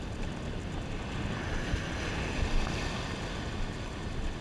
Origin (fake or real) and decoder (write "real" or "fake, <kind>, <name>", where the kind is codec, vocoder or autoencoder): real